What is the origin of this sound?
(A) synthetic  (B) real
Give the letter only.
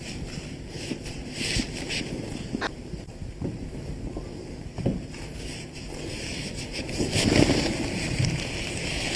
B